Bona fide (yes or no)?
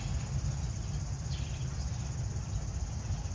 yes